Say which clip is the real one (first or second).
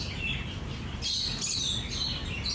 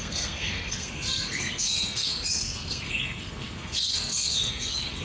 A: first